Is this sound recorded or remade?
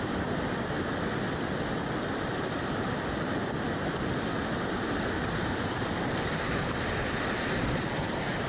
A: recorded